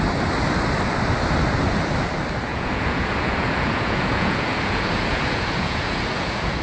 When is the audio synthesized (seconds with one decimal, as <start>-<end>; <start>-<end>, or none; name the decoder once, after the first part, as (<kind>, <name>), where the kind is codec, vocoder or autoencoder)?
2.5-6.6 (vocoder, Vocos)